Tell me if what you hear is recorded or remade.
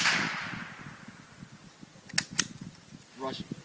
recorded